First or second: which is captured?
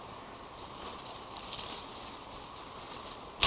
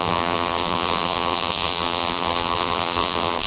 first